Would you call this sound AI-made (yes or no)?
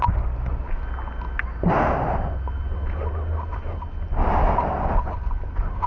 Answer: no